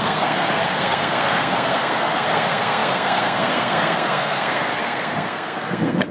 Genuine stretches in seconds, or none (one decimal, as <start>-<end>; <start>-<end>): none